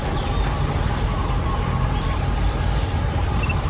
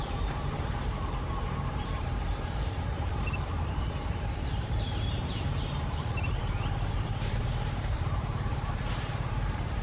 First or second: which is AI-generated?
second